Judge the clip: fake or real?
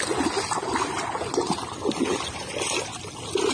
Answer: real